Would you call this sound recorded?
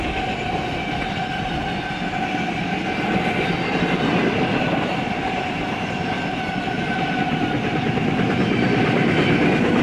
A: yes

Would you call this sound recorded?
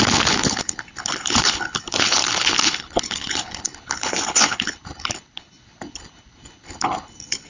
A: no